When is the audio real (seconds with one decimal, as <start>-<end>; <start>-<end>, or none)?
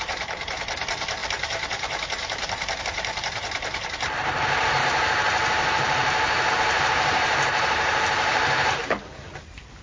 4.8-6.5